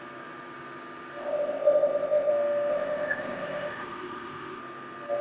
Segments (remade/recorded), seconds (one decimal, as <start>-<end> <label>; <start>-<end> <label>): 0.0-1.2 recorded; 1.2-2.3 remade; 2.3-2.7 recorded; 2.7-4.6 remade; 4.6-5.2 recorded